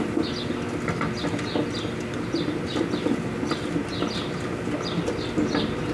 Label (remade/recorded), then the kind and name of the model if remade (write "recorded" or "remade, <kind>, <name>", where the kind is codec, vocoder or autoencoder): recorded